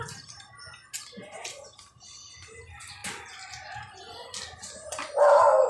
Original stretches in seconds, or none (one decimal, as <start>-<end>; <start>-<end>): 0.0-5.7